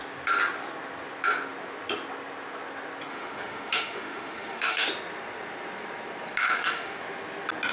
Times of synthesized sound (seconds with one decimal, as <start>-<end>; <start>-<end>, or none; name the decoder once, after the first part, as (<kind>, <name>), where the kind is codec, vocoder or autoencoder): 3.1-4.9 (autoencoder, DAC-VAE); 6.4-7.0